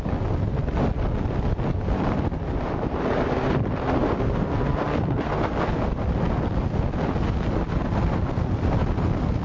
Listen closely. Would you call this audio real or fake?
real